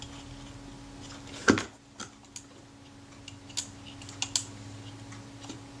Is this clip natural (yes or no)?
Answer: yes